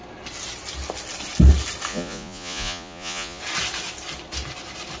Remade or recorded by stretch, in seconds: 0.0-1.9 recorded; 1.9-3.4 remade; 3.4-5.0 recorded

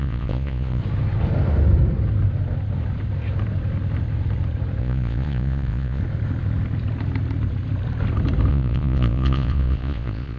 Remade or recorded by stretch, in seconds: 0.0-0.8 remade; 0.8-4.8 recorded; 4.8-6.0 remade; 6.0-8.5 recorded; 8.5-10.4 remade

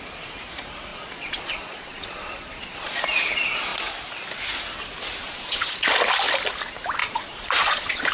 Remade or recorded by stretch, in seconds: 0.0-0.9 recorded; 0.9-3.0 remade; 3.0-5.2 recorded; 5.2-5.9 remade; 5.9-7.0 recorded; 7.0-8.1 remade

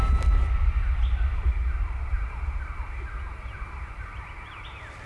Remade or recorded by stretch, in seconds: 0.0-5.1 recorded

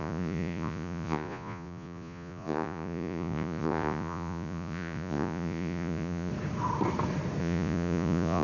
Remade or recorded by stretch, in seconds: 0.0-6.3 remade; 6.3-7.4 recorded; 7.4-8.4 remade